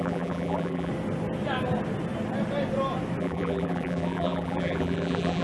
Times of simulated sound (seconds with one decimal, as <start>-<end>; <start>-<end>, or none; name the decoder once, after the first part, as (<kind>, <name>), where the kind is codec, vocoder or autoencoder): 0.0-0.9 (vocoder, BigVGAN v2); 3.2-5.4